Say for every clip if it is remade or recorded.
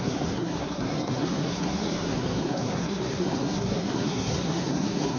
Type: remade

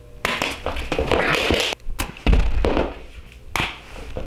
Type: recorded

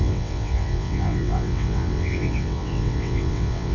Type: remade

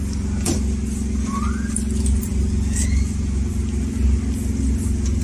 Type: recorded